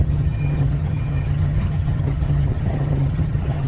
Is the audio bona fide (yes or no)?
no